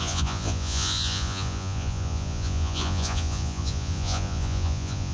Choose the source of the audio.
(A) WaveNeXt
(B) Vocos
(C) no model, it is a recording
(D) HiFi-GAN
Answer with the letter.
B